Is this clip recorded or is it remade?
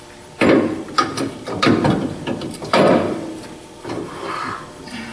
remade